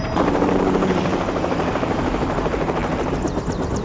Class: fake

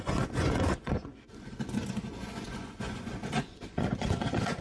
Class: fake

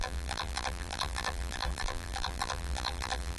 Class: fake